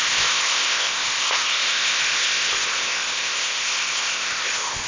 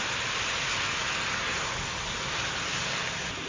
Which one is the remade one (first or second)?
first